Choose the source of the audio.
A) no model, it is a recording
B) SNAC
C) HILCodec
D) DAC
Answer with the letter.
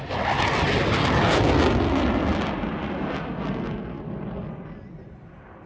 A